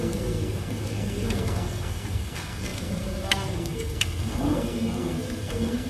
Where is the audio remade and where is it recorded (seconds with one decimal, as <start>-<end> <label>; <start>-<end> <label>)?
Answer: 0.0-5.9 remade